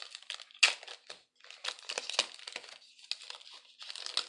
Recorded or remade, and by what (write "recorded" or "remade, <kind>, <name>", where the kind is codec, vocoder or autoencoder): recorded